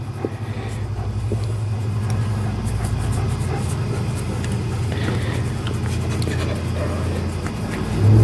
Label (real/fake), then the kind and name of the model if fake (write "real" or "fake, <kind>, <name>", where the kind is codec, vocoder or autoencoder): real